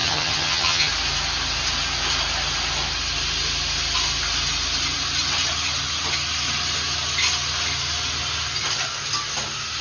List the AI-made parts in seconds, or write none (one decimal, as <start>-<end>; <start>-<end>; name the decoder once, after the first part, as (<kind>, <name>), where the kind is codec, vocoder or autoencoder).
0.0-0.9 (vocoder, HiFi-GAN)